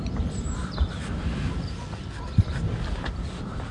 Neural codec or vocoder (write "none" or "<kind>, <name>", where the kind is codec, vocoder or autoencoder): none